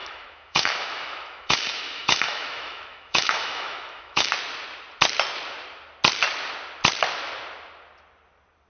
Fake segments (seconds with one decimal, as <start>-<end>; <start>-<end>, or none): 0.0-4.3